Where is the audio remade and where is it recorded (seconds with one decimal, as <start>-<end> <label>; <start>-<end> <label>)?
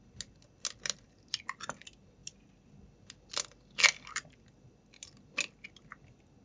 0.0-6.4 recorded